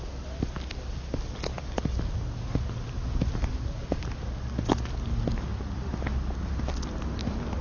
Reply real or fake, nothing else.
real